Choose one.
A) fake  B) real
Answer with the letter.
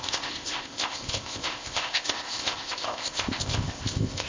A